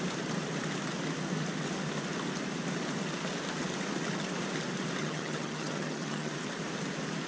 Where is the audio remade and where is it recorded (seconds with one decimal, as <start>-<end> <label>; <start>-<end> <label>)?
0.0-5.0 recorded; 5.0-6.3 remade; 6.3-7.3 recorded